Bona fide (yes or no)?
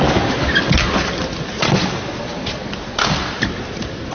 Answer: yes